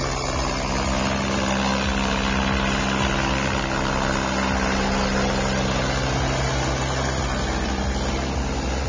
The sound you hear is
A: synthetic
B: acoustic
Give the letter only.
B